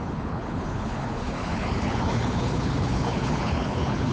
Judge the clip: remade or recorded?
remade